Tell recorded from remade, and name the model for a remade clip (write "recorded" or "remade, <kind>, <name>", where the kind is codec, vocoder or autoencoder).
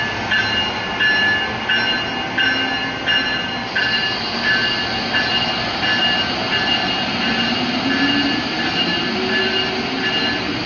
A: recorded